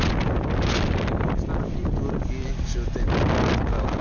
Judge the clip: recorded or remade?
recorded